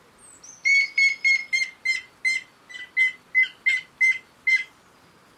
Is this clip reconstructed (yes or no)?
no